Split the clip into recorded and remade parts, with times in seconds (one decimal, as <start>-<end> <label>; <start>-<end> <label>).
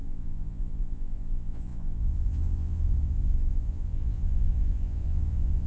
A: 0.0-5.7 remade